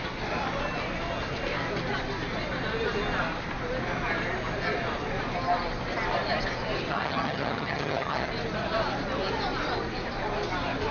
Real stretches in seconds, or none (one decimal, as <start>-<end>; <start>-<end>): 0.0-6.9; 8.3-10.9

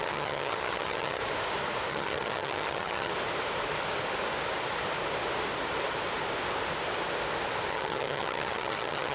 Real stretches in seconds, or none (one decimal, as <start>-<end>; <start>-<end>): 1.2-1.9; 3.1-7.7

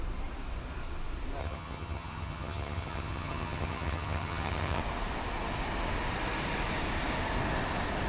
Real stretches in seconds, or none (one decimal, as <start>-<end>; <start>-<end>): 0.0-1.4; 4.8-8.1

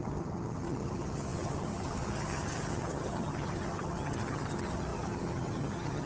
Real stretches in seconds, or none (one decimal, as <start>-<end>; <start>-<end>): none

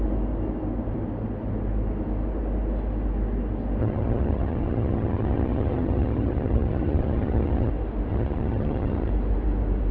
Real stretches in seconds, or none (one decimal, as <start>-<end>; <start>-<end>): 0.0-3.8; 7.7-8.1; 9.1-9.9

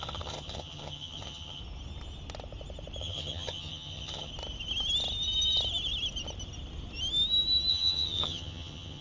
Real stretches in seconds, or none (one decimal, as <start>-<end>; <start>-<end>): 1.6-3.0; 4.3-7.7

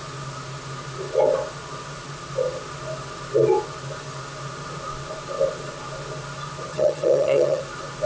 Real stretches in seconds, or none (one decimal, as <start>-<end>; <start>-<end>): 0.0-6.7; 7.6-8.1

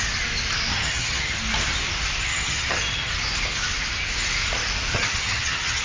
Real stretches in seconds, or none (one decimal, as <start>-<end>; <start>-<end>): 0.0-0.7; 1.3-2.3; 3.1-4.9